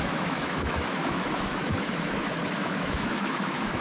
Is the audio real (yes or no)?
no